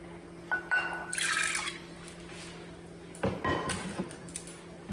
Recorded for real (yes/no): yes